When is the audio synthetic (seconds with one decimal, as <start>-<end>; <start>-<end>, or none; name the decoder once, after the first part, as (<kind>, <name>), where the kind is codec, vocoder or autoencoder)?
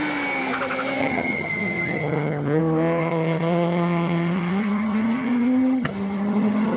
1.0-2.6 (vocoder, HiFi-GAN); 3.0-6.8